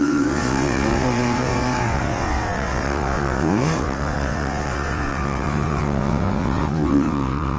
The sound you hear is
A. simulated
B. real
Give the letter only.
A